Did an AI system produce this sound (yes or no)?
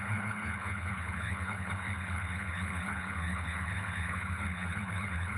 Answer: yes